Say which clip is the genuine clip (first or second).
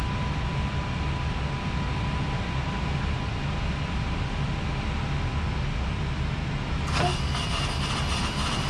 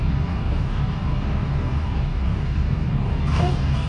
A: first